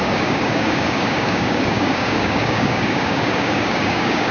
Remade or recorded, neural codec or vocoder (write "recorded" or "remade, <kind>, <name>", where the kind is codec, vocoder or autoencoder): remade, codec, DAC